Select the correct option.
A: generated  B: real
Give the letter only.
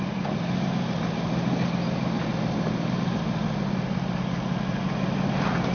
B